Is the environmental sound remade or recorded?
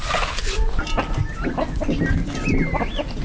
recorded